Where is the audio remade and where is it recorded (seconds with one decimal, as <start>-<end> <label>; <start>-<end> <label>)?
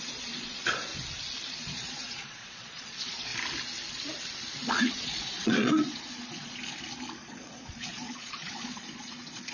0.0-0.9 remade; 0.9-1.5 recorded; 1.5-3.3 remade; 3.3-4.9 recorded; 4.9-6.6 remade; 6.6-7.2 recorded; 7.2-9.5 remade